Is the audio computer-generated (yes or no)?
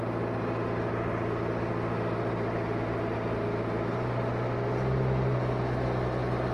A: no